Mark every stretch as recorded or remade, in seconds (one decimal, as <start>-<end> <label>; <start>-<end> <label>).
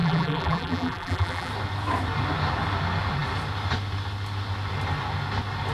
0.0-1.5 remade; 1.5-5.7 recorded